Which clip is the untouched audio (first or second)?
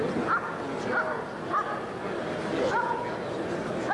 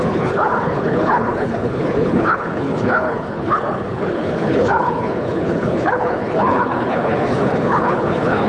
first